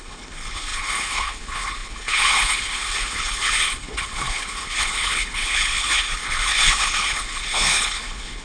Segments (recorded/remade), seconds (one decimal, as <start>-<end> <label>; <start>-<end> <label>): 0.0-8.4 remade